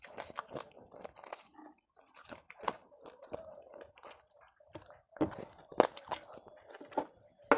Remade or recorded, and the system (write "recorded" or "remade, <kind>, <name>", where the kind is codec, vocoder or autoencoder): recorded